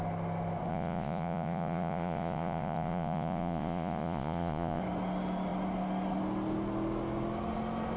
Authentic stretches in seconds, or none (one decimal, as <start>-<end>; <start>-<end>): 0.0-0.7; 4.8-8.0